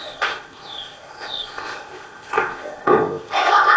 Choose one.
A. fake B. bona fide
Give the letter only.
A